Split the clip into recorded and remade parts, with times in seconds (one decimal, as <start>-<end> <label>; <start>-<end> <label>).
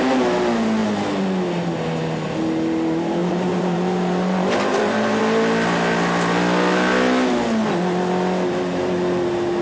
0.0-3.2 recorded; 3.2-5.2 remade; 5.2-9.6 recorded